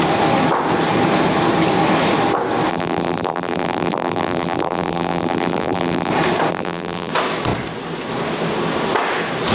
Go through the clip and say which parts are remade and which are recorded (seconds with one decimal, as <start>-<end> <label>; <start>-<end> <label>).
0.0-2.7 recorded; 2.7-6.1 remade; 6.1-6.5 recorded; 6.5-7.1 remade; 7.1-9.5 recorded